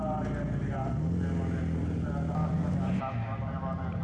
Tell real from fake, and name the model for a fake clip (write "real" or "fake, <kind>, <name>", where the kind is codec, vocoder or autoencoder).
real